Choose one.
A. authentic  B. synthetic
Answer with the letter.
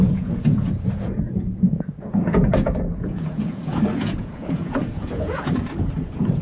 B